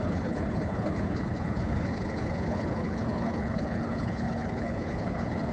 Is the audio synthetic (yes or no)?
yes